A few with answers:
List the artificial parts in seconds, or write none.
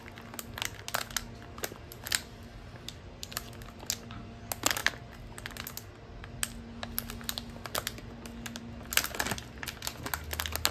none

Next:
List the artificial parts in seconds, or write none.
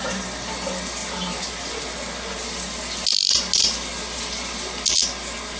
none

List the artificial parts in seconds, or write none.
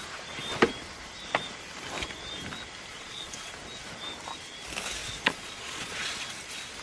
2.9-3.5 (vocoder, Vocos); 5.0-6.3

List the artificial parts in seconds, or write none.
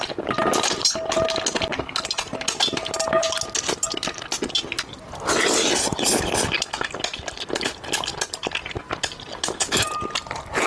none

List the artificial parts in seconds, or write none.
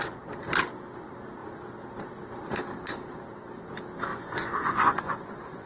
4.1-5.7 (vocoder, Vocos)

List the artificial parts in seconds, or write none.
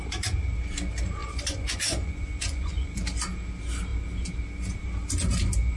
1.2-3.0 (vocoder, Vocos)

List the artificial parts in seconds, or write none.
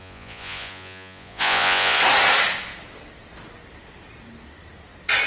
0.0-2.0 (vocoder, Vocos)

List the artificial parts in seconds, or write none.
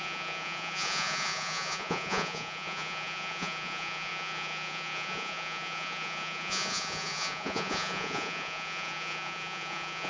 0.0-10.1 (vocoder, Vocos)